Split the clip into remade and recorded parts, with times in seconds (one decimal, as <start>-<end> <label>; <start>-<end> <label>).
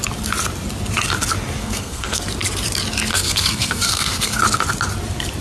0.0-1.6 recorded; 1.6-2.2 remade; 2.2-3.1 recorded; 3.1-4.4 remade; 4.4-5.4 recorded